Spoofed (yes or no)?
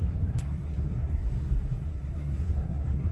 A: yes